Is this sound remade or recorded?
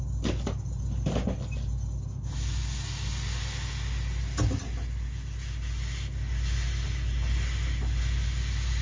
recorded